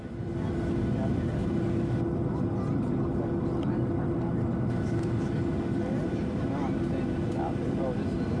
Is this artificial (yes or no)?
no